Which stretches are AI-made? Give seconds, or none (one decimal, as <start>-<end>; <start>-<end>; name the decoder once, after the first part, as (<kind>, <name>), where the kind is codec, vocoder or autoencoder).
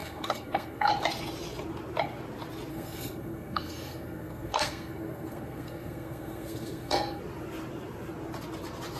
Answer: 0.0-0.9 (codec, SNAC); 2.7-7.2